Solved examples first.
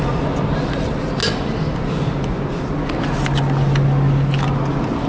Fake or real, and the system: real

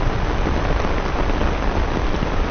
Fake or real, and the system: real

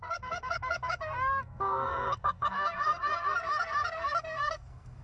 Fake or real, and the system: fake, codec, SNAC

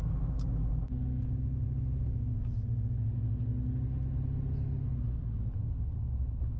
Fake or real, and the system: real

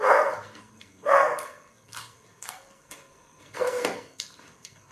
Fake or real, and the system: fake, codec, SNAC